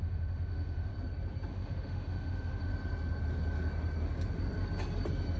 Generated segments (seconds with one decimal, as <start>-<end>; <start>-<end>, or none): 0.0-0.9; 1.5-2.7